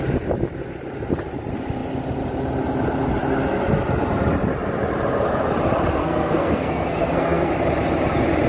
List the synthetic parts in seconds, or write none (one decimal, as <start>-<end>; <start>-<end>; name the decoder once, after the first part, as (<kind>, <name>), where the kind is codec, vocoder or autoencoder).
6.0-7.5 (codec, SNAC)